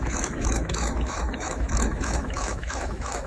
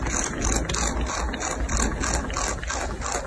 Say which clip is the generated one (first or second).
first